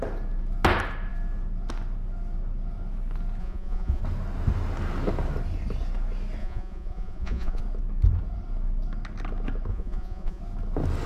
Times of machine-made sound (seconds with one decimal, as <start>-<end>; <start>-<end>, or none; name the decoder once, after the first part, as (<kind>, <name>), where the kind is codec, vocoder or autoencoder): 3.4-4.0 (vocoder, Vocos); 6.4-7.6; 9.7-10.4